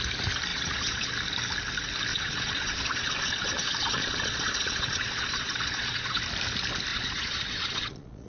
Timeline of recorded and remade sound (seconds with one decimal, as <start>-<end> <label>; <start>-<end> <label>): 0.0-0.5 recorded; 0.5-1.1 remade; 1.1-2.1 recorded; 2.1-6.2 remade; 6.2-6.9 recorded; 6.9-8.3 remade